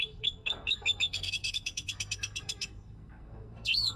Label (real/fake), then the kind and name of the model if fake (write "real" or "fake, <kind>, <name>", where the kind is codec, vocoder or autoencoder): fake, codec, SNAC